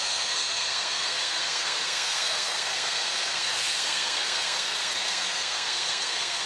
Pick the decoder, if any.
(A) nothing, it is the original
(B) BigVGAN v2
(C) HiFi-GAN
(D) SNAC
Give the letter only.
D